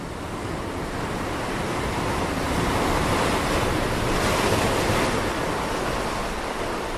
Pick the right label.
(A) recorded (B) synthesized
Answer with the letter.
A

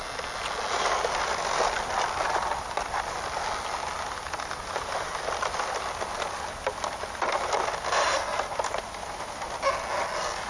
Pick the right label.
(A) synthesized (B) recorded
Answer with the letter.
B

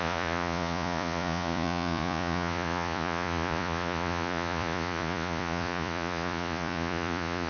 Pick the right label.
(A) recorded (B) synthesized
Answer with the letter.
B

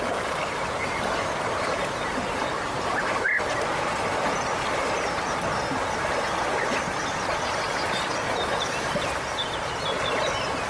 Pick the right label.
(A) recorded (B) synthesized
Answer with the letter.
A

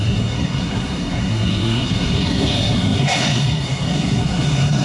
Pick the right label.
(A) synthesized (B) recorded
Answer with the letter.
A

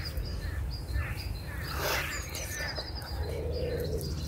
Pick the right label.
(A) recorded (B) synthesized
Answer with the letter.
A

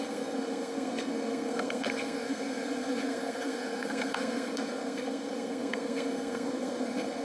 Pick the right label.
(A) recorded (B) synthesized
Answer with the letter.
B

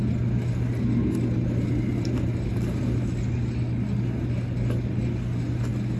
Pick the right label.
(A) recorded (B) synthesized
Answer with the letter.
A